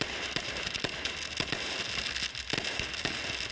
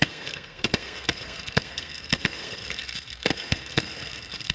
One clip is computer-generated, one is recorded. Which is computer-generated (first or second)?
second